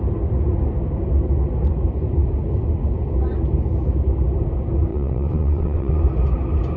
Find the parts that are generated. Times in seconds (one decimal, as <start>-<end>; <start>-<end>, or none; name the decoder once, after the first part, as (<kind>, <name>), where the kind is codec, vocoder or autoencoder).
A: 4.9-6.0 (vocoder, WaveNeXt)